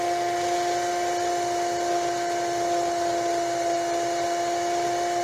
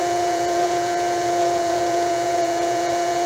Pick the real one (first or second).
first